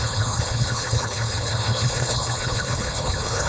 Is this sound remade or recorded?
remade